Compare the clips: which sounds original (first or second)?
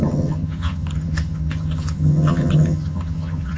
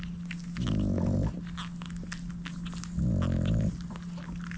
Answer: second